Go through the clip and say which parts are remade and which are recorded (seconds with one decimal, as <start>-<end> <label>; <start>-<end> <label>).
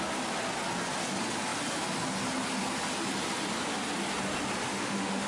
0.0-4.7 recorded; 4.7-5.3 remade